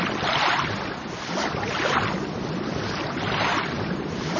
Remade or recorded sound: recorded